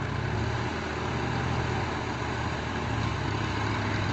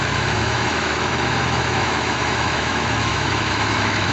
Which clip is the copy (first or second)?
second